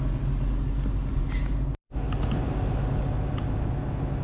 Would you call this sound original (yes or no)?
yes